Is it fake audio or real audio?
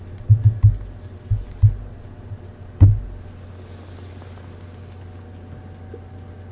real